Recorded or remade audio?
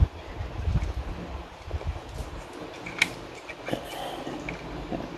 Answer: recorded